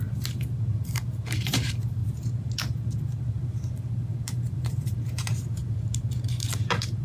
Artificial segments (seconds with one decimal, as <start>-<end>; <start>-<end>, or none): 0.0-7.0